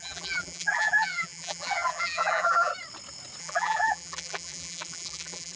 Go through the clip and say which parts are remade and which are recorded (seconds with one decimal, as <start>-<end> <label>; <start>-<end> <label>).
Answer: 0.0-2.7 remade; 2.7-3.4 recorded; 3.4-5.6 remade